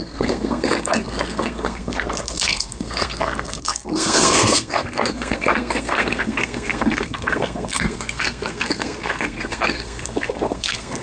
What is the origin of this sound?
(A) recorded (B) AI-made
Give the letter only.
B